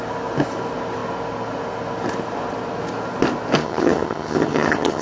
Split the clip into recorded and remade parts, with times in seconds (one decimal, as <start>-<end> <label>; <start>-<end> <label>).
0.0-3.6 recorded; 3.6-5.0 remade